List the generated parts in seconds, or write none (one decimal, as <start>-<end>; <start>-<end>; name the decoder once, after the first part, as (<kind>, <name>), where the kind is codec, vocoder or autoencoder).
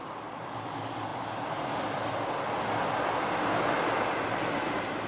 none